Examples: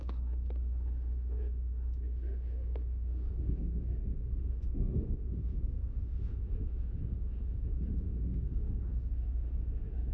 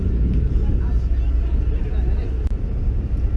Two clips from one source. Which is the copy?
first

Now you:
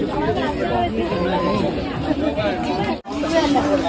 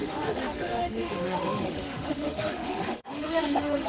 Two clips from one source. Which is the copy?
second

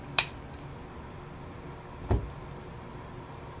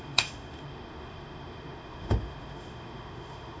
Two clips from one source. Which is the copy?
second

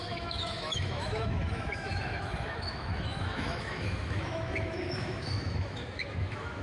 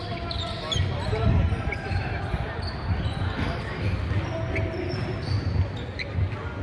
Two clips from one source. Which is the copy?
first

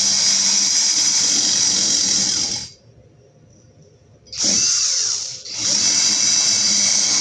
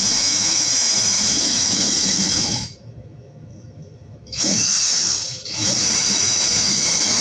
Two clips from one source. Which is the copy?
second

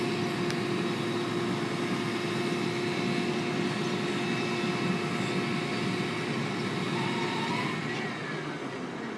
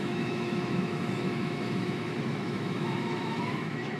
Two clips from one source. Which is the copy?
second